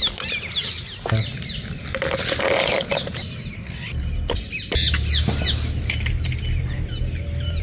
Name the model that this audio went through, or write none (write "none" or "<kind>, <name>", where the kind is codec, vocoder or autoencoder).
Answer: none